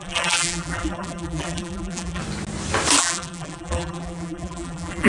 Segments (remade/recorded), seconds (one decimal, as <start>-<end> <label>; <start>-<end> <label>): 0.0-2.2 remade; 2.2-3.0 recorded; 3.0-5.1 remade